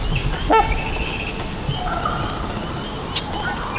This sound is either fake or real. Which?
real